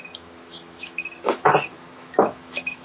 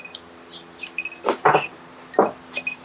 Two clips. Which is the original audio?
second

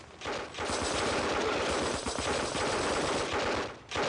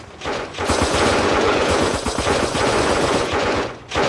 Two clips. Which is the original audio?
first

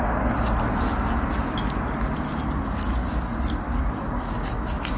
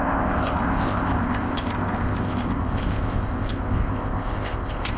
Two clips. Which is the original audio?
first